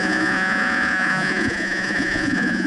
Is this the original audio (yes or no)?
no